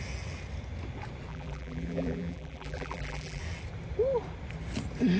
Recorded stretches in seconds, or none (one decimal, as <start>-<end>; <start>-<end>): 0.0-1.3; 3.4-5.2